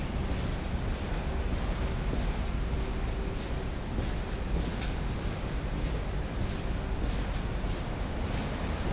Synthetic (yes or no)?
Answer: no